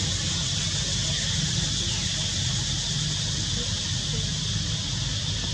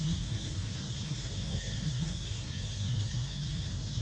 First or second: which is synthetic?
second